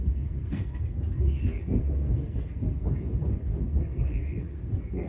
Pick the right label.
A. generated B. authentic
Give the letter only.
A